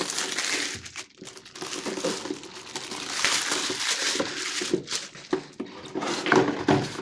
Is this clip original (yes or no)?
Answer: yes